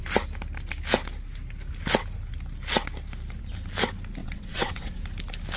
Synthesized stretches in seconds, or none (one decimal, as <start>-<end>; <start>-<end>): 4.2-5.0